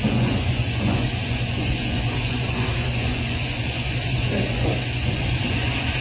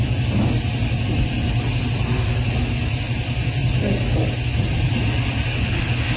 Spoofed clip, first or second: first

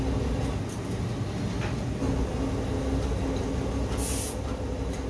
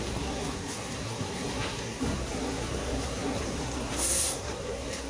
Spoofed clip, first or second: second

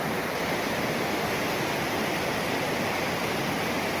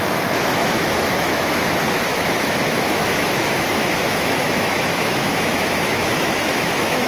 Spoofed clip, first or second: second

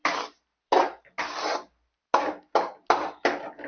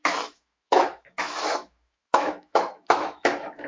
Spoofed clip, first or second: second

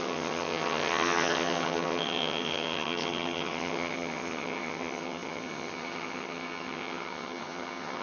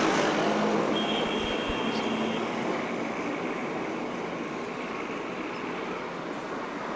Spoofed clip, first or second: first